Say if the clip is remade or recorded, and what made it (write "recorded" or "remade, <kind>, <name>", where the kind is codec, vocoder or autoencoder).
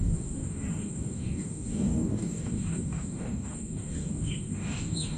remade, codec, DAC